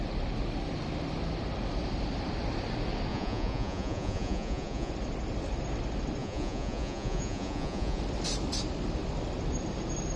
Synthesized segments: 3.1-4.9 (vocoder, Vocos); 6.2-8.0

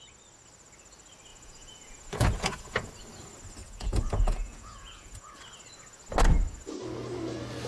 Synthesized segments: 1.3-2.9 (vocoder, Vocos); 3.6-5.4

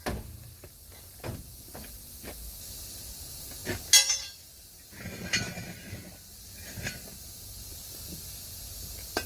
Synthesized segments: none

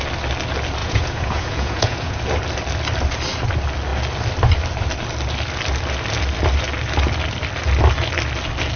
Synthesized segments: 0.8-2.2 (vocoder, Vocos)

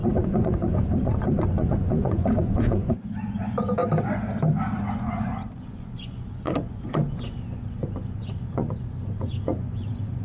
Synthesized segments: 0.0-3.8 (vocoder, Vocos); 4.8-10.2